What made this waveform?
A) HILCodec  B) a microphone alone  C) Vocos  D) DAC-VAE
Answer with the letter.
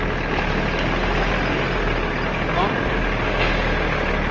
B